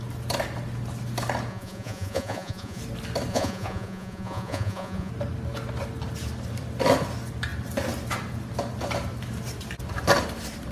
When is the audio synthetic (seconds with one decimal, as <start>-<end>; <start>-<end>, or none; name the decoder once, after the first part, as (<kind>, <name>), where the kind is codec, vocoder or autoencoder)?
1.5-2.8 (vocoder, Vocos); 3.3-5.1